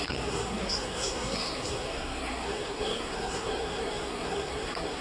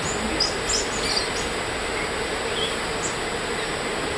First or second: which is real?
second